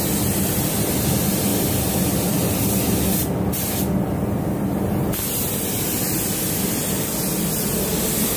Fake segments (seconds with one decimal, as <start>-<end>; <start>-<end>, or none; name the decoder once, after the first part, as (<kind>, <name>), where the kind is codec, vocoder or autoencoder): none